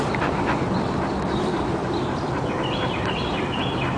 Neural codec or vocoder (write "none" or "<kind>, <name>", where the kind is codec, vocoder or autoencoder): vocoder, BigVGAN v2